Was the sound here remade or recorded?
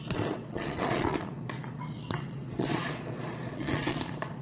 remade